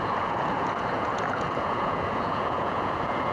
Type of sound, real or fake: fake